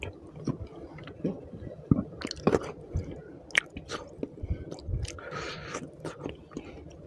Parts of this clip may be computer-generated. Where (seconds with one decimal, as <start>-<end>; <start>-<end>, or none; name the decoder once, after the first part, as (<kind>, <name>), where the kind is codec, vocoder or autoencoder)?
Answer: none